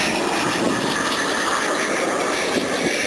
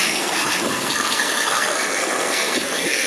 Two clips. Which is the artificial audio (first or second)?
second